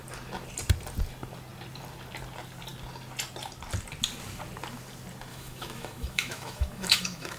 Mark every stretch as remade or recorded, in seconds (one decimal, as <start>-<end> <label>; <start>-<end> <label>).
0.0-5.3 recorded; 5.3-7.4 remade